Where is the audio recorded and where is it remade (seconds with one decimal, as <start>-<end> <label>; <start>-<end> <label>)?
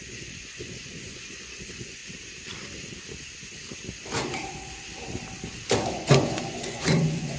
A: 0.0-2.0 remade; 2.0-5.9 recorded; 5.9-7.4 remade